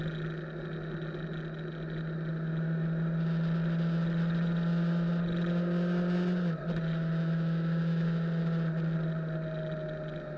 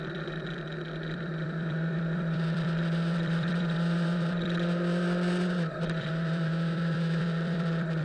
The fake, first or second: second